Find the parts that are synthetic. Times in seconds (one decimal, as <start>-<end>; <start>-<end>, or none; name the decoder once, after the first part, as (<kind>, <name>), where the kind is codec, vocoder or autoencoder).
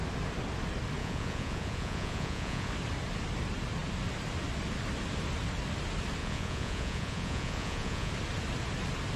1.0-2.7 (vocoder, Vocos); 6.2-8.1